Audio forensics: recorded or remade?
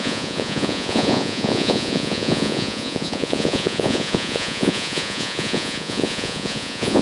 remade